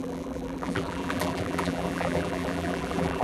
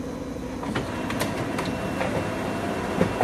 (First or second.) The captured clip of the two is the second